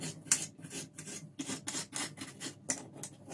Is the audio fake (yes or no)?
no